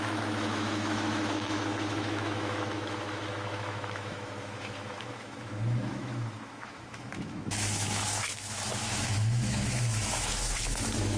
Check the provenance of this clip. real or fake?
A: fake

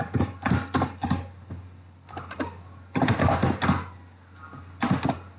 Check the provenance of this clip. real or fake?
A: real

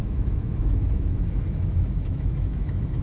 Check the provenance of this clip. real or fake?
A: fake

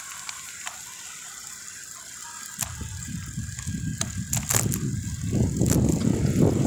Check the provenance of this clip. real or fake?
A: real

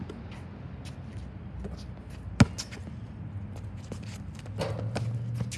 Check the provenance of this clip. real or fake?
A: real